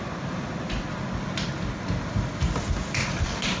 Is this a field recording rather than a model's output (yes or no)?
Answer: yes